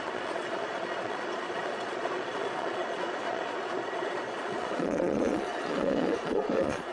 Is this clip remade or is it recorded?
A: remade